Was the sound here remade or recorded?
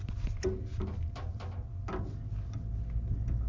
recorded